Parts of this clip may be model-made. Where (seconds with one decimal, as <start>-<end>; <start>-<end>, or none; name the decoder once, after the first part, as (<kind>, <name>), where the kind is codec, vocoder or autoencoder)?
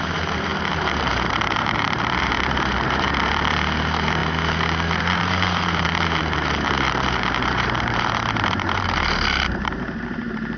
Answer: 0.0-10.6 (vocoder, BigVGAN v2)